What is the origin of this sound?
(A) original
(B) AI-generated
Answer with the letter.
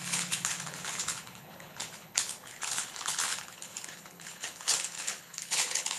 B